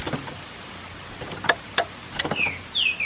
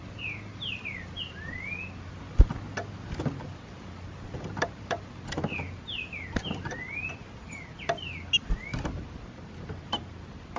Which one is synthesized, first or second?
first